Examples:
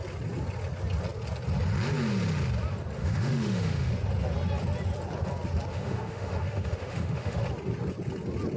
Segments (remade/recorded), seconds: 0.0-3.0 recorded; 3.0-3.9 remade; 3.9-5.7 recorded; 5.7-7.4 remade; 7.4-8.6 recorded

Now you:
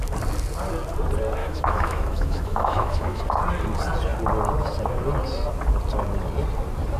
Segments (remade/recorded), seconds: 0.0-1.4 recorded; 1.4-3.2 remade; 3.2-7.0 recorded

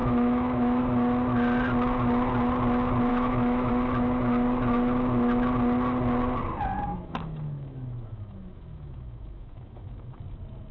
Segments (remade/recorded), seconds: 0.0-0.8 remade; 0.8-3.1 recorded; 3.1-3.7 remade; 3.7-6.9 recorded; 6.9-10.2 remade; 10.2-10.7 recorded